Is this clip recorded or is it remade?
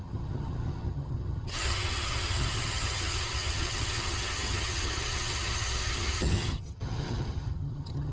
remade